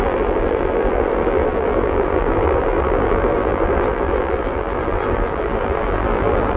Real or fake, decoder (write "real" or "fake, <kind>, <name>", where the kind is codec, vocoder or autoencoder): fake, vocoder, BigVGAN v2